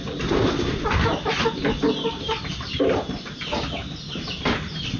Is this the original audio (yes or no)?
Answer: yes